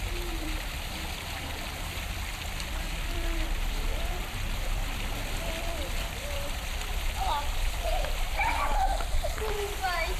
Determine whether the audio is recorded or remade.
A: remade